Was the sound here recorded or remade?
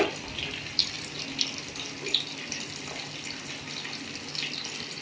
recorded